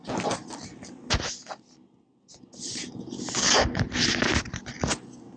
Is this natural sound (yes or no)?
yes